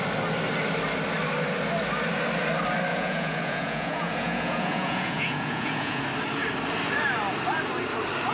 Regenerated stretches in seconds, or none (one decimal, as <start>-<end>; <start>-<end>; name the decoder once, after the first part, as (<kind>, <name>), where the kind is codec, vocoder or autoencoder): 2.9-6.0 (vocoder, Vocos)